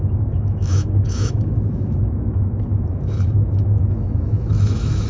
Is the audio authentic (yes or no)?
no